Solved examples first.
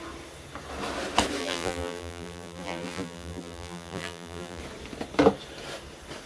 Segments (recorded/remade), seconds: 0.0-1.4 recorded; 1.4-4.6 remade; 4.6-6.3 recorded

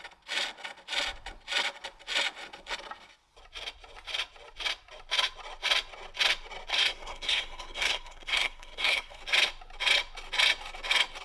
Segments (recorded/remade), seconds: 0.0-6.7 recorded; 6.7-9.2 remade; 9.2-11.2 recorded

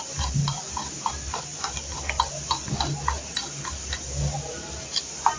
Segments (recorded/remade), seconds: 0.0-5.4 recorded

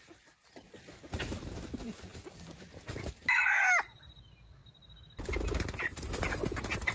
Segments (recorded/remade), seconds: 0.0-6.9 recorded

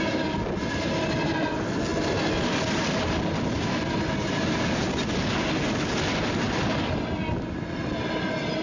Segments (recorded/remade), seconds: 0.0-8.6 recorded

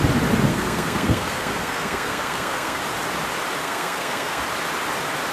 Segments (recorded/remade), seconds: 0.0-0.5 recorded; 0.5-2.8 remade; 2.8-3.6 recorded; 3.6-4.4 remade; 4.4-5.3 recorded

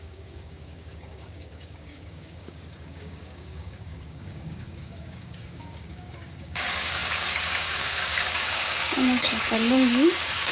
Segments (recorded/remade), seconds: 0.0-10.5 remade

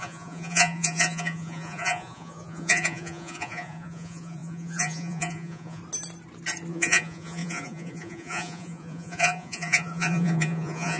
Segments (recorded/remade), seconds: 0.0-5.8 remade; 5.8-6.7 recorded; 6.7-11.0 remade